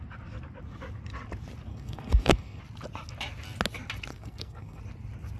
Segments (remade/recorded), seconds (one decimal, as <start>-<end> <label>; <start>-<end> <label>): 0.0-1.7 recorded; 1.7-2.6 remade; 2.6-4.1 recorded; 4.1-4.8 remade; 4.8-5.4 recorded

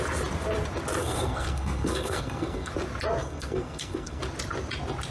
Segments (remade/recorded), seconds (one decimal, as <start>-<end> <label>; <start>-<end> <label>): 0.0-1.0 recorded; 1.0-2.7 remade; 2.7-3.2 recorded; 3.2-4.2 remade; 4.2-5.1 recorded

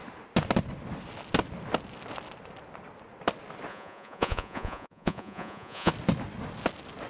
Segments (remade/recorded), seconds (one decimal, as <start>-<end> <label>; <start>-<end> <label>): 0.0-3.7 recorded; 3.7-5.9 remade; 5.9-7.1 recorded

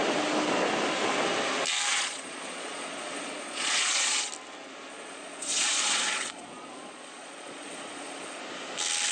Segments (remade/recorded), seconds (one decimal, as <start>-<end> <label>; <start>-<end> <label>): 0.0-1.9 recorded; 1.9-4.3 remade; 4.3-4.9 recorded; 4.9-8.4 remade; 8.4-9.1 recorded

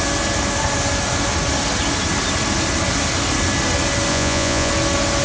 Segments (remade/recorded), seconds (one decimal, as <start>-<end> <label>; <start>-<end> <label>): 0.0-4.1 recorded; 4.1-4.7 remade; 4.7-5.2 recorded

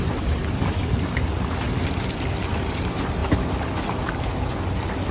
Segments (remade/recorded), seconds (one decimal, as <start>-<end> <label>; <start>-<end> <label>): 0.0-5.1 recorded